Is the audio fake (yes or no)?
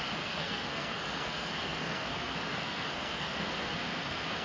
yes